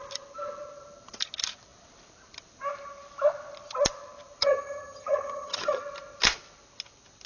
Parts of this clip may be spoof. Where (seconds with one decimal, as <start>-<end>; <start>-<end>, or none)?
4.4-5.8